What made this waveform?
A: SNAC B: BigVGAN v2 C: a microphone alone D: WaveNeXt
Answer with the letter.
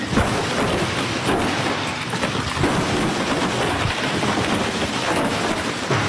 C